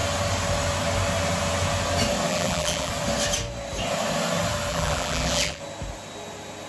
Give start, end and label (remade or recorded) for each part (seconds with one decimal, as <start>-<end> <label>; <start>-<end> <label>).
0.0-2.3 recorded; 2.3-2.9 remade; 2.9-4.7 recorded; 4.7-5.6 remade; 5.6-6.7 recorded